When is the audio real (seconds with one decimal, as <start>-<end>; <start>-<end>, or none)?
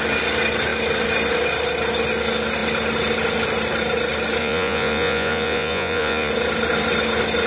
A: 0.0-4.4; 6.3-7.5